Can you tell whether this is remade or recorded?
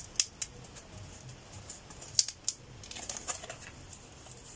recorded